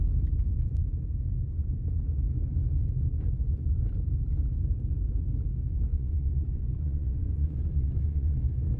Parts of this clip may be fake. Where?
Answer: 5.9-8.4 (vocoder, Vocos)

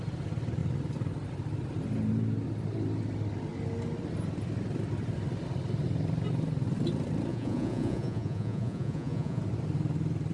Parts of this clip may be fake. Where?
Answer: 7.3-9.4 (vocoder, Vocos)